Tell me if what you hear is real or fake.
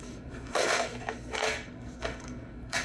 fake